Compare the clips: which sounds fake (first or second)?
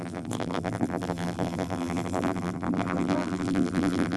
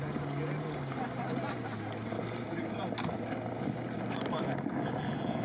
first